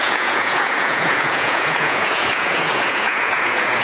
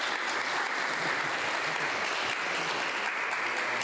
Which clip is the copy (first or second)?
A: first